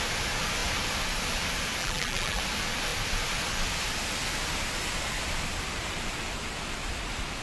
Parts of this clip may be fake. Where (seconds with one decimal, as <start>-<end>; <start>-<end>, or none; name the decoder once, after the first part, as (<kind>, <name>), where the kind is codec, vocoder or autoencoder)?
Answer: 1.8-2.4 (vocoder, BigVGAN v2)